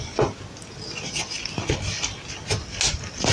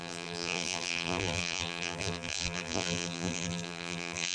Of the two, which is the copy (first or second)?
second